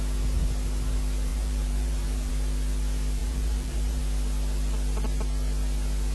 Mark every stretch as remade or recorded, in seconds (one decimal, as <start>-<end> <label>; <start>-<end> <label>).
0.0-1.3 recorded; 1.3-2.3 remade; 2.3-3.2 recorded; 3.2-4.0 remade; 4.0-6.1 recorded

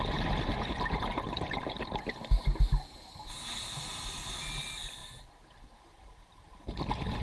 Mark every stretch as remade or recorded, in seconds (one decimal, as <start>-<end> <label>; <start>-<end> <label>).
0.0-0.5 recorded; 0.5-1.8 remade; 1.8-5.0 recorded; 5.0-5.5 remade; 5.5-7.2 recorded

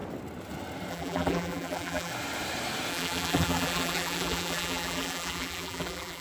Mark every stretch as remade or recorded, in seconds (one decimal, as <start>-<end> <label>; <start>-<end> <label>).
0.0-0.9 recorded; 0.9-2.1 remade; 2.1-2.9 recorded; 2.9-6.2 remade

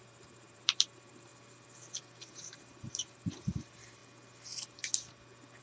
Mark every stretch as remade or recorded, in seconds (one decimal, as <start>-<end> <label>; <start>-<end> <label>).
0.0-1.3 remade; 1.3-2.2 recorded; 2.2-4.0 remade; 4.0-5.6 recorded